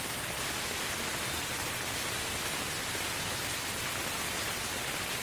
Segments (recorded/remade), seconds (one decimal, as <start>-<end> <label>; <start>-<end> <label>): 0.0-5.2 recorded